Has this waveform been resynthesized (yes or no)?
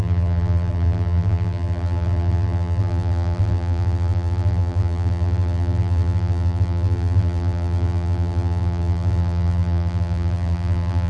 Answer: yes